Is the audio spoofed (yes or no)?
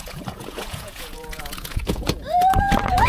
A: yes